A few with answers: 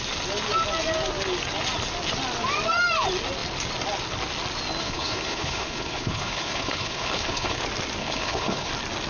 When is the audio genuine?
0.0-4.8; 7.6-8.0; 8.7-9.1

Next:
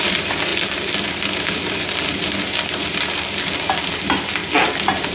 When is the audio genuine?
0.0-5.1

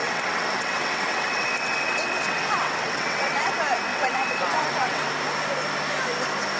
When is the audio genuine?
3.5-3.9; 5.1-6.6

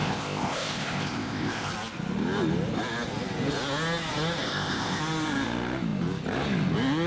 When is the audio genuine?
1.7-4.4; 5.0-7.1